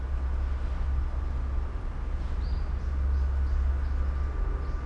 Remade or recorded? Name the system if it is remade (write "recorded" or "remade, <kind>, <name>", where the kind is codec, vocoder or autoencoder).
recorded